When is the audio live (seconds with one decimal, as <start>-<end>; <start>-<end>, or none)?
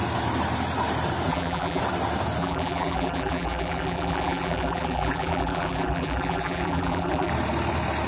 0.0-1.3; 1.8-2.4; 7.3-8.1